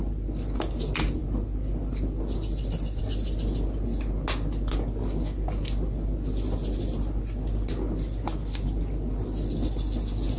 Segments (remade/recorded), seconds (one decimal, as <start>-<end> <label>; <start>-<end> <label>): 0.0-10.4 recorded